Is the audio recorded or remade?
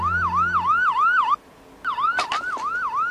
recorded